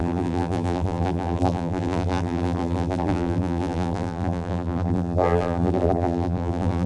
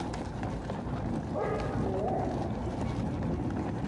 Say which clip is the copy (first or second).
first